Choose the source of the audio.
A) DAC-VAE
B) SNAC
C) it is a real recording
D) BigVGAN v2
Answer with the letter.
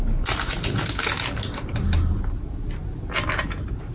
C